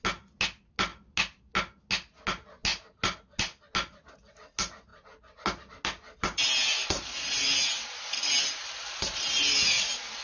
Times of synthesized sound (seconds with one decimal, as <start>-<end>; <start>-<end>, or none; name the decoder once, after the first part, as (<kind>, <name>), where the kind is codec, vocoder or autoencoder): none